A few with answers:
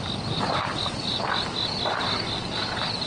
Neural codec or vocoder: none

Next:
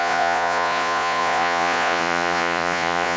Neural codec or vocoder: vocoder, Vocos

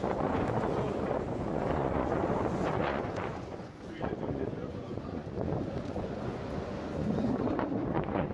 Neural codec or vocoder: vocoder, Vocos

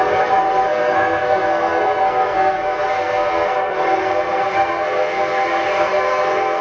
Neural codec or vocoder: codec, SNAC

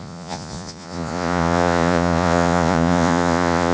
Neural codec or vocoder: vocoder, Vocos